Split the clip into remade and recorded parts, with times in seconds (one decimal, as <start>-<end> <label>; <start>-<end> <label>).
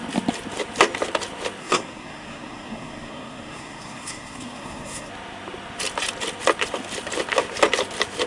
0.0-1.6 recorded; 1.6-5.1 remade; 5.1-8.3 recorded